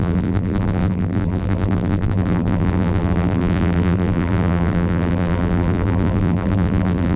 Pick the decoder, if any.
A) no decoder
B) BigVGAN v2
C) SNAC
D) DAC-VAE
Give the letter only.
B